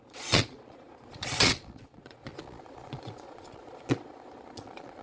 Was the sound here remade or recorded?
remade